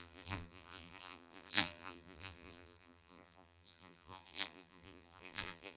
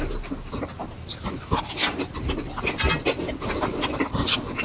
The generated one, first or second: first